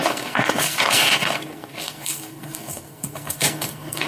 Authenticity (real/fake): fake